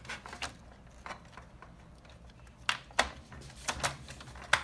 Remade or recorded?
recorded